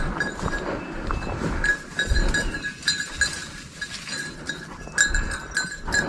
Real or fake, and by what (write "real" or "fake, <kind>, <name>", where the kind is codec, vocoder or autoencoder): real